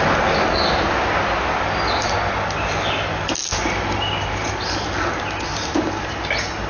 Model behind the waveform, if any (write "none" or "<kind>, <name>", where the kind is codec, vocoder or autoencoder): none